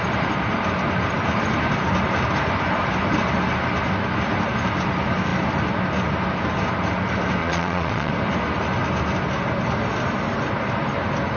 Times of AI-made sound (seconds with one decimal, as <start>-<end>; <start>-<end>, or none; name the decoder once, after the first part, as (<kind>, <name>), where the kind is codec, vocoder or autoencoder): 7.4-8.1 (vocoder, Vocos)